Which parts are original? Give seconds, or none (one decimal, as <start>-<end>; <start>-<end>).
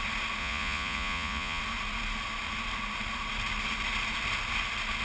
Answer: 0.0-0.4; 1.6-5.0